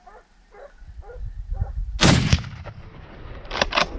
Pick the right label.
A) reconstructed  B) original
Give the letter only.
B